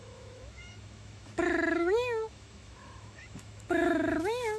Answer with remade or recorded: remade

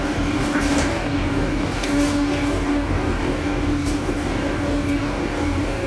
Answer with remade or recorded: remade